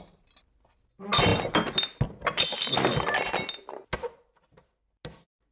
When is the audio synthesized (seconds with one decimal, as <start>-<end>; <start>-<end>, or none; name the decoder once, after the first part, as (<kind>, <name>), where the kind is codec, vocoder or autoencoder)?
none